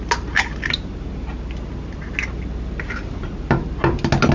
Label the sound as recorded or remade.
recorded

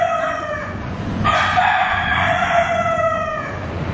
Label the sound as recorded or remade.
remade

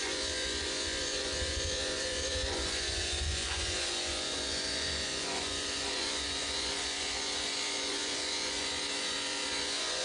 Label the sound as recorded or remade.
remade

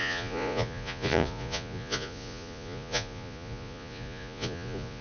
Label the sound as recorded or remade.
remade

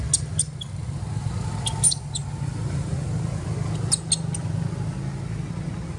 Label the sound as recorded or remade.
recorded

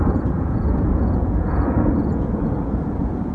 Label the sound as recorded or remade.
remade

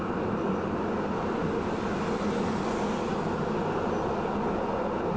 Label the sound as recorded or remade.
recorded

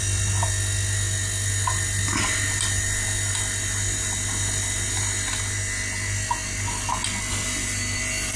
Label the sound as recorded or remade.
recorded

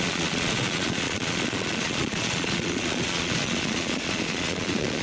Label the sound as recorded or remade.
remade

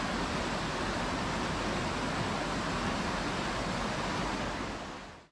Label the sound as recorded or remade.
recorded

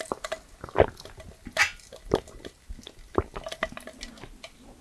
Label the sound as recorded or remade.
recorded